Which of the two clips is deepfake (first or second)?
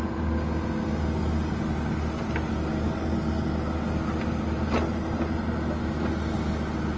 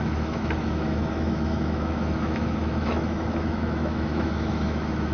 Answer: second